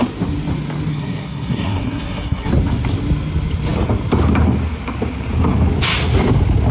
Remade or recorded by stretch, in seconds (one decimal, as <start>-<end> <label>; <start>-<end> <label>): 0.0-0.9 recorded; 0.9-2.5 remade; 2.5-6.7 recorded